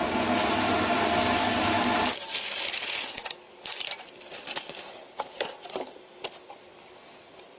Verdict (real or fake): real